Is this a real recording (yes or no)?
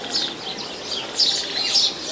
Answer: yes